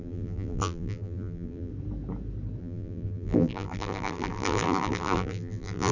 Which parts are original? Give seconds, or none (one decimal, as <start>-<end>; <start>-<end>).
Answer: 1.7-2.6